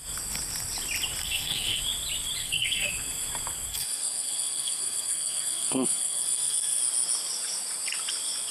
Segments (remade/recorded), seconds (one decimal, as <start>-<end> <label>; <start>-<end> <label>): 0.0-1.2 recorded; 1.2-1.8 remade; 1.8-2.4 recorded; 2.4-2.9 remade; 2.9-3.7 recorded; 3.7-6.8 remade; 6.8-8.5 recorded